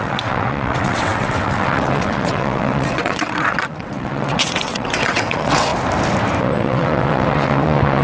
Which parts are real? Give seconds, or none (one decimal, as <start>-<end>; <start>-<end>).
5.7-6.4